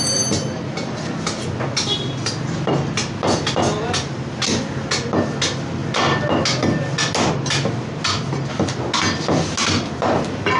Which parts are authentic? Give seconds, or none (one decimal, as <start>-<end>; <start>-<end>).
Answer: 0.0-10.6